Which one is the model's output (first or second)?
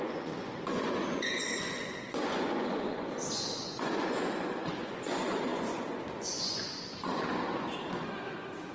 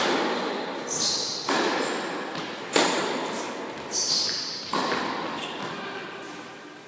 first